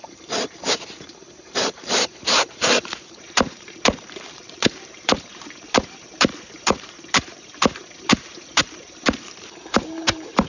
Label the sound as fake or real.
fake